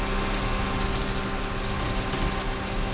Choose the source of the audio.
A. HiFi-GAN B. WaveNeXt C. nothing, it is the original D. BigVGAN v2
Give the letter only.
C